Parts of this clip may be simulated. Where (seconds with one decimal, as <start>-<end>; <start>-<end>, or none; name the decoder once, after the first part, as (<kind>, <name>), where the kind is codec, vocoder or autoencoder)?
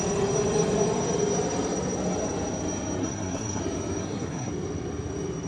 3.0-3.6 (codec, SNAC); 4.0-4.5